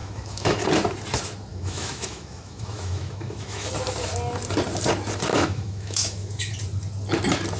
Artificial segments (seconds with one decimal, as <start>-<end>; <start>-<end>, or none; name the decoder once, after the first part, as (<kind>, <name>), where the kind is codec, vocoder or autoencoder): 0.0-0.6 (autoencoder, DAC-VAE); 1.5-3.7; 5.3-6.5